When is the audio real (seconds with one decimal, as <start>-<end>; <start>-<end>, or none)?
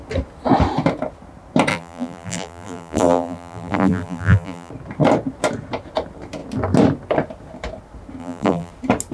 0.0-1.7; 4.7-8.2; 8.7-9.1